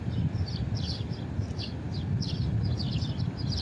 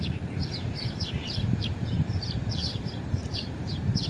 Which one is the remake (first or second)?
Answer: second